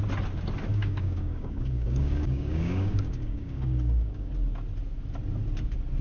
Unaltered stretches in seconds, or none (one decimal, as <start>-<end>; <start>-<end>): 0.0-0.7; 4.3-6.0